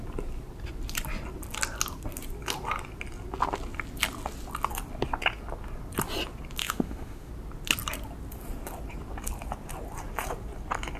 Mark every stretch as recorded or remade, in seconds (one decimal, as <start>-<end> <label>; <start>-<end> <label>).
0.0-6.6 recorded; 6.6-7.3 remade; 7.3-11.0 recorded